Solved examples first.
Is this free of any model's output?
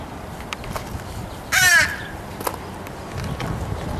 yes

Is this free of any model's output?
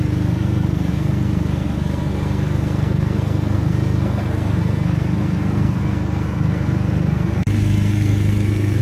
no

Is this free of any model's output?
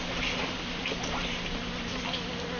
yes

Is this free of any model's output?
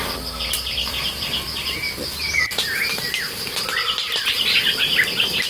no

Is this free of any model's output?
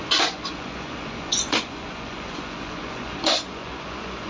no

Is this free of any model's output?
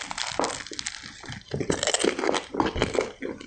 yes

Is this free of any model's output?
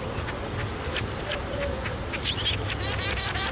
yes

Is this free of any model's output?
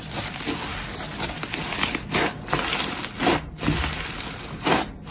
yes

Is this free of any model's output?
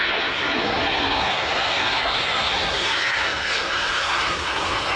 no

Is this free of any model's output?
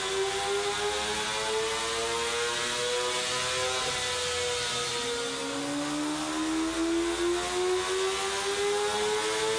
yes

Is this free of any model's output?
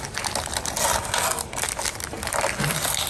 yes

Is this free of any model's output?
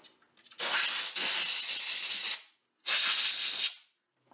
yes